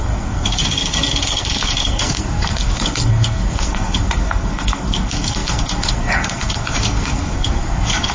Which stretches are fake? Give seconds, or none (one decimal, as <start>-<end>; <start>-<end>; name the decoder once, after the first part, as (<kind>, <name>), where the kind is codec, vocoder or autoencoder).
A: 0.0-8.1 (codec, SNAC)